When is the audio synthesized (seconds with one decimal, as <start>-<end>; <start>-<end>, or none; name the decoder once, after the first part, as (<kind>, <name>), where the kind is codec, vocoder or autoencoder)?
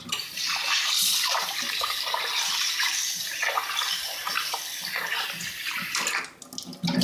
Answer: 0.0-4.6 (vocoder, BigVGAN v2)